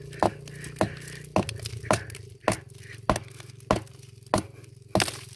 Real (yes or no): yes